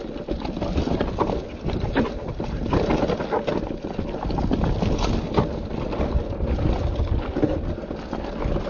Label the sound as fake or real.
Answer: real